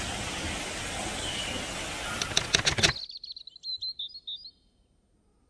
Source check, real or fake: real